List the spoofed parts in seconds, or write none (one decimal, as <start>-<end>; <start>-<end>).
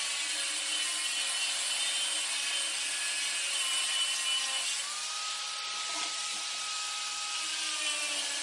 none